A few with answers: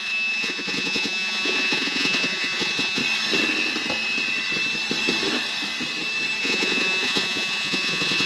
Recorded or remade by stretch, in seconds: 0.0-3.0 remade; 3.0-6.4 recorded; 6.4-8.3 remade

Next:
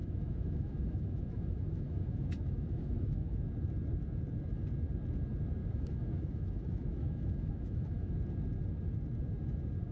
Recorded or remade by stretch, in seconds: 0.0-3.4 remade; 3.4-5.6 recorded; 5.6-8.1 remade; 8.1-9.9 recorded

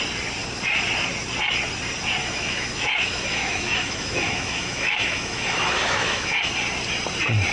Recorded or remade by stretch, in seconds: 0.0-2.2 recorded; 2.2-6.5 remade; 6.5-7.5 recorded

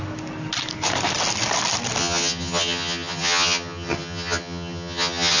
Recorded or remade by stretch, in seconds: 0.0-2.0 recorded; 2.0-5.4 remade

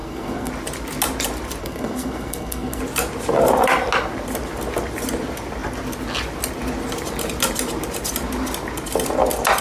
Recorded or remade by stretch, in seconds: 0.0-0.5 remade; 0.5-1.6 recorded; 1.6-2.8 remade; 2.8-9.6 recorded

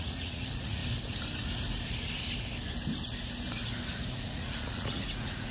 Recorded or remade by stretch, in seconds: 0.0-0.8 remade; 0.8-4.1 recorded; 4.1-5.5 remade

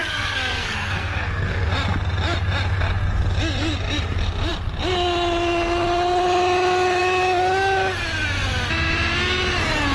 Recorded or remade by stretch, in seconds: 0.0-1.7 remade; 1.7-9.9 recorded